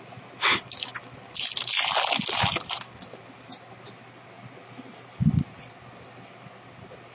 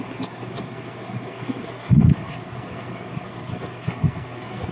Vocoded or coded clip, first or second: second